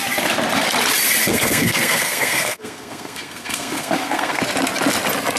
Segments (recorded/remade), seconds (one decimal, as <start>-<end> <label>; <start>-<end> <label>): 0.0-1.2 recorded; 1.2-4.4 remade; 4.4-5.4 recorded